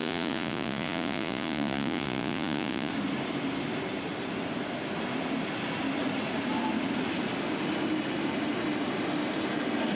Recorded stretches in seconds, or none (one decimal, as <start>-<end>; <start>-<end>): 2.9-10.0